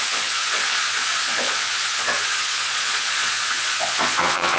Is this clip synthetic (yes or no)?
yes